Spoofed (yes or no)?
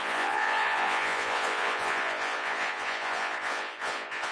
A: yes